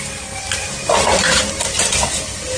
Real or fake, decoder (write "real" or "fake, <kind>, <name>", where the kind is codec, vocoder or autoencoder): real